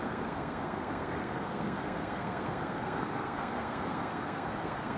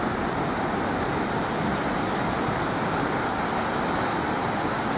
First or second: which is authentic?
second